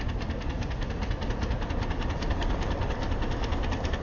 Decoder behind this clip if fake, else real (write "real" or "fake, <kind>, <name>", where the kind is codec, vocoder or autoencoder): real